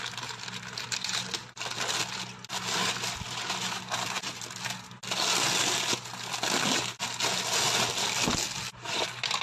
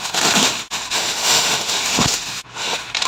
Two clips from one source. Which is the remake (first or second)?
second